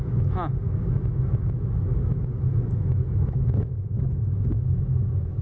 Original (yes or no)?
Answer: no